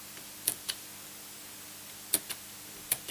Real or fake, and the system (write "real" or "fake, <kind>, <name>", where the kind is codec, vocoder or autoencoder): real